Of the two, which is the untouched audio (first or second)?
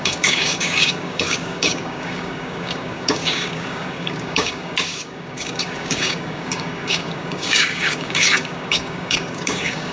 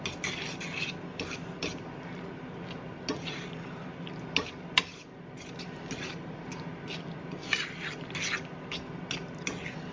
second